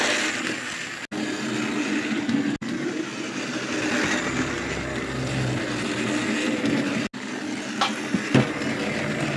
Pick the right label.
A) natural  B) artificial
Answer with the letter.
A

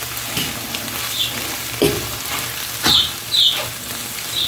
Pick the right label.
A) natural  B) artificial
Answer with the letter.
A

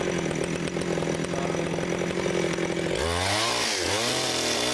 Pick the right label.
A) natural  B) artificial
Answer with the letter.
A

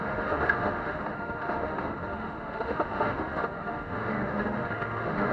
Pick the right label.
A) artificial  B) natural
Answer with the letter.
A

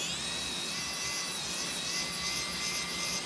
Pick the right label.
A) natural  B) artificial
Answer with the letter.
A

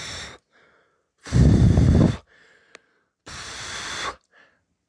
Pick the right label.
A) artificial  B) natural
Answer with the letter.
B